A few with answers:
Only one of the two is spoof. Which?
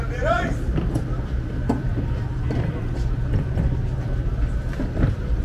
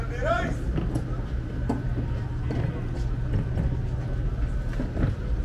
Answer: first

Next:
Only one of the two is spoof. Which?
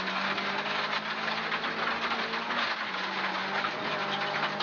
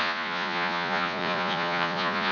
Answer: second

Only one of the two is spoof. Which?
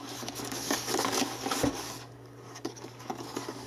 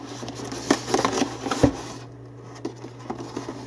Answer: first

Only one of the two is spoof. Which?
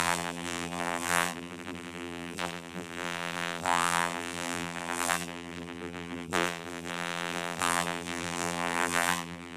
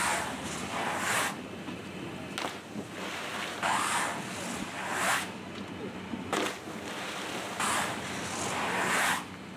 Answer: first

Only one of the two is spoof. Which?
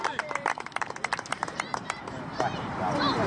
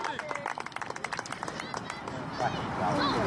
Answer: first